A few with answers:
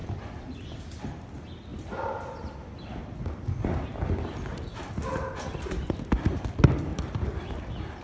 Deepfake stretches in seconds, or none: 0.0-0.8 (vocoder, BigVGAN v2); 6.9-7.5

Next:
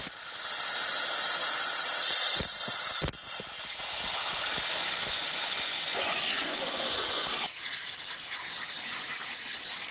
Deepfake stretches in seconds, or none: 4.8-7.3 (vocoder, Vocos)

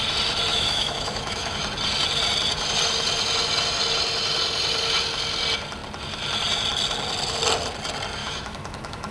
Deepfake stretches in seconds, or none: 0.5-1.6 (autoencoder, DAC-VAE); 8.2-9.1

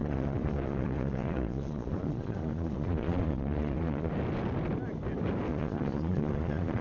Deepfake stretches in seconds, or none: 0.0-4.1 (vocoder, Vocos); 5.5-6.8

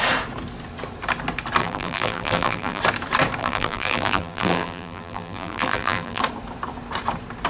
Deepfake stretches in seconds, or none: 1.6-2.8 (vocoder, BigVGAN v2); 3.4-6.2

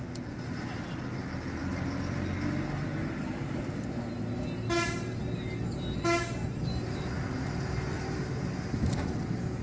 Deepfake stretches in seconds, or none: none

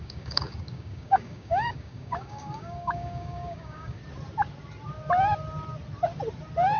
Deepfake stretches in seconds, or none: 0.0-4.0 (codec, DAC)